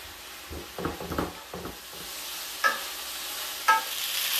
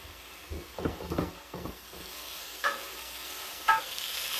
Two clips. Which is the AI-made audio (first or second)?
second